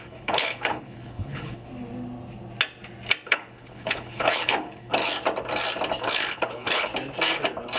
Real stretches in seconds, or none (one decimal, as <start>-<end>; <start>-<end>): 1.7-3.3; 5.0-6.0; 6.9-7.8